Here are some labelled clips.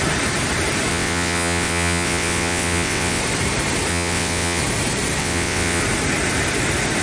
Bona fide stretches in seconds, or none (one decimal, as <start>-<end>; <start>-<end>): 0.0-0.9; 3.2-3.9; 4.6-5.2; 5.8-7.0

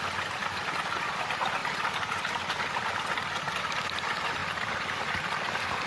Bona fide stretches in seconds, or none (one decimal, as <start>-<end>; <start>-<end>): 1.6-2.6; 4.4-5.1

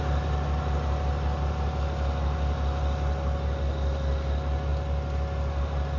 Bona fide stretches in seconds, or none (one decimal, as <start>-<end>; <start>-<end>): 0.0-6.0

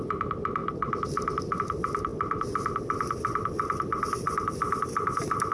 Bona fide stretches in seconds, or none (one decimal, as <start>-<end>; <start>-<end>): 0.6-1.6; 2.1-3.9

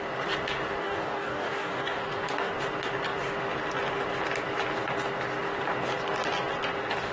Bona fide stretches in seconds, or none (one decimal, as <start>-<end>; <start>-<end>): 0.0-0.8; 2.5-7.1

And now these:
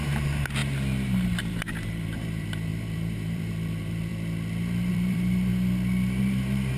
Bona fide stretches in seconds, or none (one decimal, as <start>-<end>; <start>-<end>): 0.6-1.4; 4.1-4.9; 5.5-6.2